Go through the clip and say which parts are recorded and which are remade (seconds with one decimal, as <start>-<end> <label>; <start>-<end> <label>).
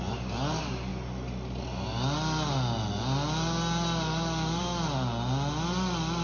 0.0-6.2 recorded